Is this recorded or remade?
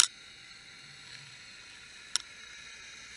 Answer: recorded